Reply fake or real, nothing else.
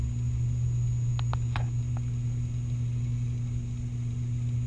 real